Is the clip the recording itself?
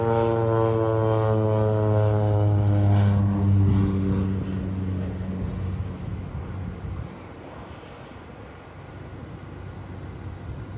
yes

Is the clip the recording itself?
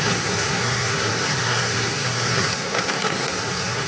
no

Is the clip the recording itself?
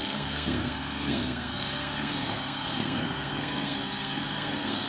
no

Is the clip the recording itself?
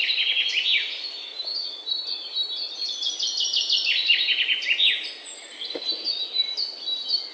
yes